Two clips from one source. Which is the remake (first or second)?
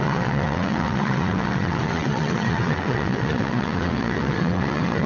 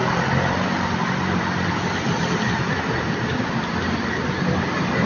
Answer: first